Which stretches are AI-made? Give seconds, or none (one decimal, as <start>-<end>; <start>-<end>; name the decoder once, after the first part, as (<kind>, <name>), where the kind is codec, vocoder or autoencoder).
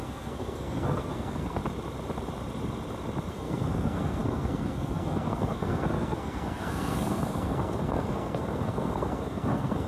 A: 0.0-1.6 (codec, SNAC); 3.3-9.9